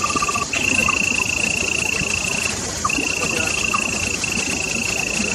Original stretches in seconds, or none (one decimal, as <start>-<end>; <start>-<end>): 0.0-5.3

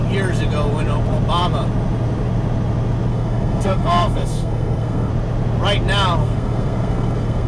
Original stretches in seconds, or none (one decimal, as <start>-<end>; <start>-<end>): 0.0-3.1; 5.1-6.2

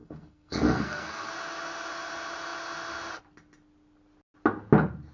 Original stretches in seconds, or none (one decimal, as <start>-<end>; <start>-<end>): 1.3-5.1

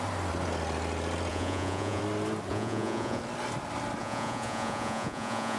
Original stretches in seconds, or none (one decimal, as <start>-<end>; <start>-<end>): 0.0-1.3; 2.0-2.5; 3.2-4.0